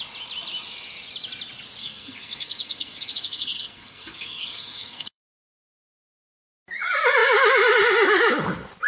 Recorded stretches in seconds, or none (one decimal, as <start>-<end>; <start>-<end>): 0.0-1.8; 5.3-8.9